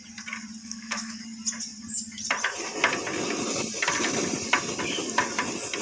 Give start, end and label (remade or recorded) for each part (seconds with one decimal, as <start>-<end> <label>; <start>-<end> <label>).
0.0-0.6 recorded; 0.6-1.2 remade; 1.2-5.8 recorded